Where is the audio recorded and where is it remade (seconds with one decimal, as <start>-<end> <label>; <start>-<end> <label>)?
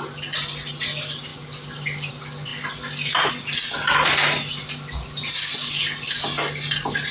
0.0-7.1 recorded